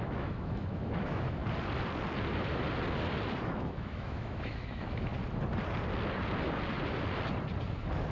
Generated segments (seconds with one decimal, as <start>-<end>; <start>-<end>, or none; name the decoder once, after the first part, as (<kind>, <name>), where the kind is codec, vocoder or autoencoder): 0.0-1.4 (autoencoder, DAC-VAE); 3.4-5.1